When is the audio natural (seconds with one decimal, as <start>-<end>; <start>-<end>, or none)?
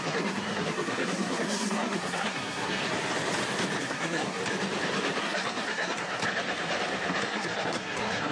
2.8-3.8; 4.4-5.2; 6.2-7.2